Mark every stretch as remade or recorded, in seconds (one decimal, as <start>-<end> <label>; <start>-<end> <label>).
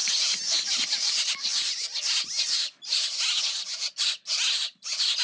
0.0-5.2 recorded